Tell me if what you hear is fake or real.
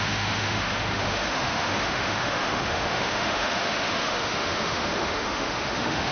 fake